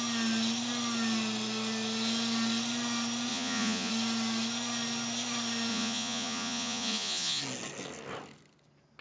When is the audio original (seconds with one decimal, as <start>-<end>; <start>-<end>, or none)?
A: 0.0-3.3; 3.9-5.7; 7.4-9.0